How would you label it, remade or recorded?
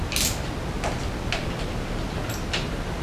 recorded